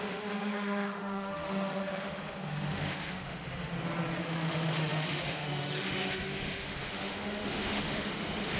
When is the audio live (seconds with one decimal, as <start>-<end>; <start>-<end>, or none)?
3.7-4.2